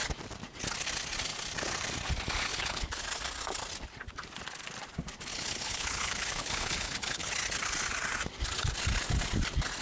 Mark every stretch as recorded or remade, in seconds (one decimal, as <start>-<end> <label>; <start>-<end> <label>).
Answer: 0.0-2.5 recorded; 2.5-3.0 remade; 3.0-5.3 recorded; 5.3-7.3 remade; 7.3-9.8 recorded